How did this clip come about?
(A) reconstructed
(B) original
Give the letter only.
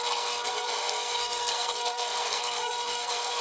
A